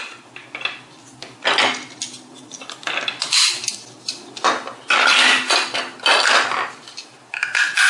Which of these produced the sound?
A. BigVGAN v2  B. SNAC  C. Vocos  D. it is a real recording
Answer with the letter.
D